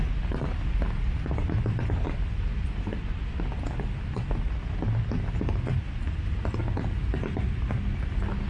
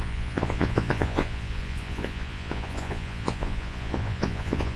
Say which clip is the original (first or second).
first